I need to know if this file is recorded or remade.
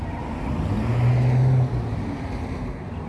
recorded